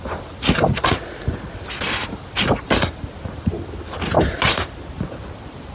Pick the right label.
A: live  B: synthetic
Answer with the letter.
A